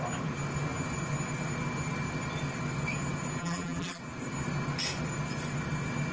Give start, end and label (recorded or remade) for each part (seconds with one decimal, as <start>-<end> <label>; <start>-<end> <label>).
0.0-3.4 recorded; 3.4-4.0 remade; 4.0-6.1 recorded

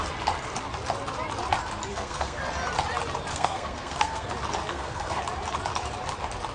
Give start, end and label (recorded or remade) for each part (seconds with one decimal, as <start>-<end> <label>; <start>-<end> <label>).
0.0-1.9 recorded; 1.9-2.4 remade; 2.4-3.3 recorded; 3.3-4.3 remade; 4.3-4.7 recorded; 4.7-5.2 remade; 5.2-6.5 recorded

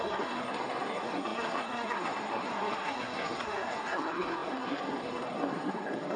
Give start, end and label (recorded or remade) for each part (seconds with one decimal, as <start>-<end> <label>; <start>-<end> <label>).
0.0-6.2 remade

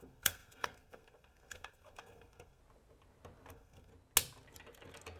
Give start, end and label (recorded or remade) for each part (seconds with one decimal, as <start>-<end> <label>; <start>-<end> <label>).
0.0-2.6 remade; 2.6-3.5 recorded; 3.5-3.9 remade; 3.9-5.2 recorded

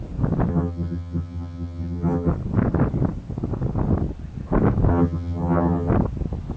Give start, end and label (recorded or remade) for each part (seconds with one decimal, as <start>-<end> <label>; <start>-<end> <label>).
0.0-0.5 recorded; 0.5-2.3 remade; 2.3-4.9 recorded; 4.9-5.9 remade; 5.9-6.6 recorded

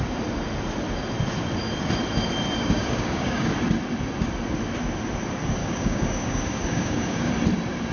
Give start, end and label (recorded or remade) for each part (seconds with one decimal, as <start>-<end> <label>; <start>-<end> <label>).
0.0-2.6 recorded; 2.6-3.5 remade; 3.5-5.6 recorded; 5.6-7.3 remade; 7.3-7.9 recorded

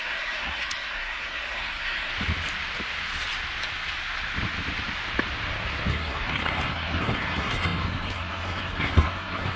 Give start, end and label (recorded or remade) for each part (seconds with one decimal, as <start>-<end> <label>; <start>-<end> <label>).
0.0-2.1 remade; 2.1-5.9 recorded; 5.9-9.6 remade

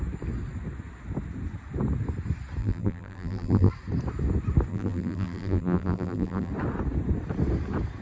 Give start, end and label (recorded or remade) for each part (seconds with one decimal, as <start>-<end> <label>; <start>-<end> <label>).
0.0-2.6 recorded; 2.6-3.7 remade; 3.7-4.7 recorded; 4.7-6.5 remade; 6.5-8.0 recorded